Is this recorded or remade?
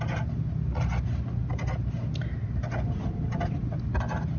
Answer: recorded